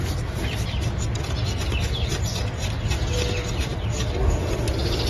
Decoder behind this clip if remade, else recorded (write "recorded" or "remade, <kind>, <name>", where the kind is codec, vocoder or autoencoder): recorded